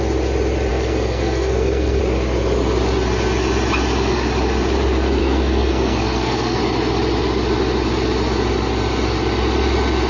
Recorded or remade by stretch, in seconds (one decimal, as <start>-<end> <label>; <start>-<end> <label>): 0.0-0.7 recorded; 0.7-2.0 remade; 2.0-5.2 recorded; 5.2-6.6 remade; 6.6-10.1 recorded